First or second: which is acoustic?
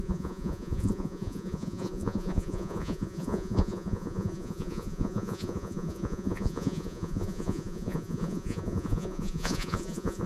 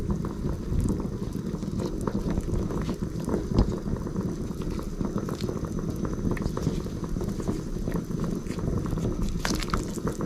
second